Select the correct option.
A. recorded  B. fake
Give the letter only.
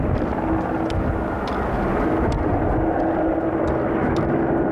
A